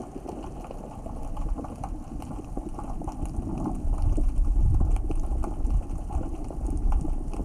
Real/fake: real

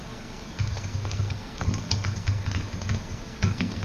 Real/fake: fake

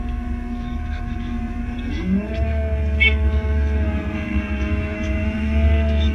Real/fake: fake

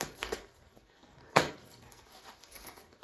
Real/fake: fake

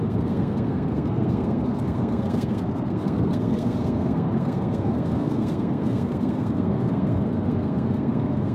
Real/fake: fake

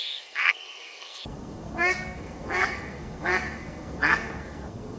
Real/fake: fake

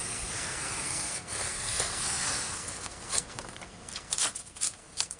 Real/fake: fake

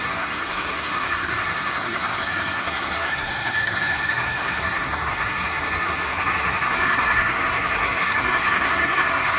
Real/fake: fake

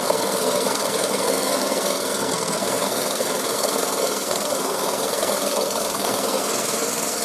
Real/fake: fake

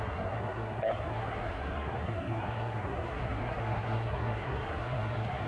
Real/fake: fake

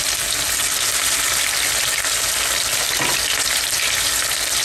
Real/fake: real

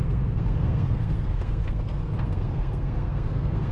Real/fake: fake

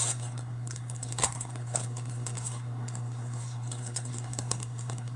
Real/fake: fake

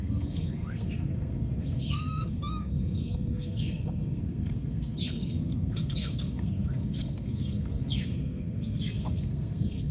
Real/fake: fake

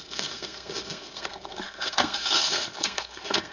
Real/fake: fake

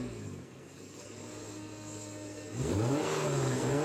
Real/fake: fake